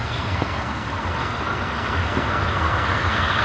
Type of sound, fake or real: fake